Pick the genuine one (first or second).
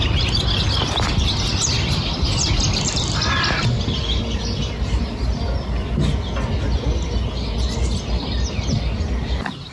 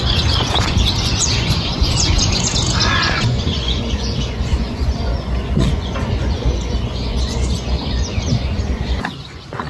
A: first